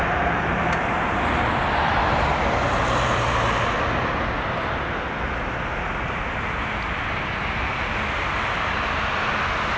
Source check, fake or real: real